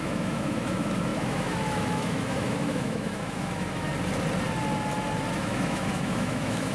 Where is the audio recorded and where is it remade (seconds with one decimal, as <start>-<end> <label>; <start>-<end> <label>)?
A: 0.0-3.9 remade; 3.9-5.3 recorded; 5.3-6.7 remade